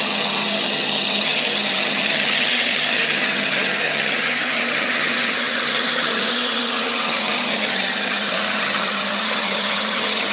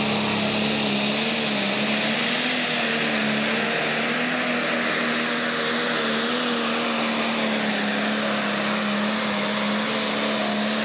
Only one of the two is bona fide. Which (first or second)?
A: second